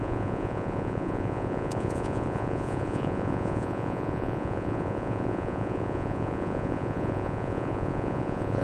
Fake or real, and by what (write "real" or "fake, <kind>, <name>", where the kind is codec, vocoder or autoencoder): fake, vocoder, Vocos